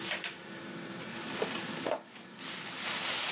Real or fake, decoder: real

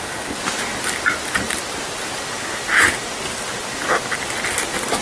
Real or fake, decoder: real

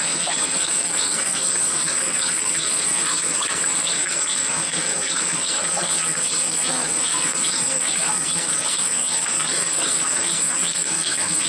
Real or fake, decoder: fake, codec, SNAC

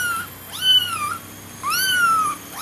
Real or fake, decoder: real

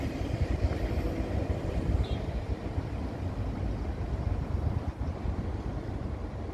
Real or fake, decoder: real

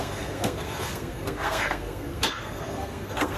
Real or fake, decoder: fake, codec, SNAC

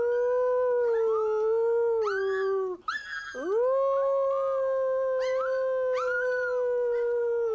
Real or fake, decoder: real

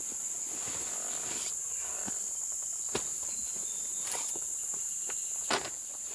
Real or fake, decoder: real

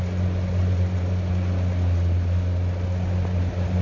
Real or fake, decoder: real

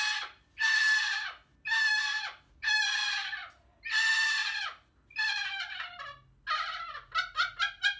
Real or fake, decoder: real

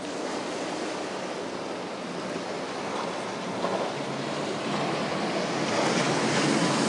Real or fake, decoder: real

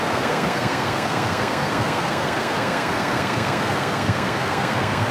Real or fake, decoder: fake, codec, SNAC